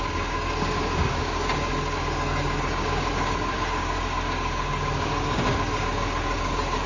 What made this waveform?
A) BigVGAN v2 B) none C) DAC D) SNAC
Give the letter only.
C